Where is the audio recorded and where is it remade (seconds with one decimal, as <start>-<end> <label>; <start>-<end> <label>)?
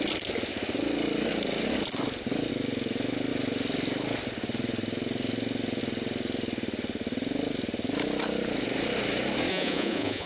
0.0-9.5 recorded; 9.5-10.3 remade